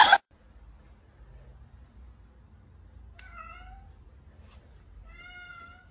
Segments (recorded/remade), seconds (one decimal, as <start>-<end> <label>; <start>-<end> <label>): 0.0-0.5 remade; 0.5-5.9 recorded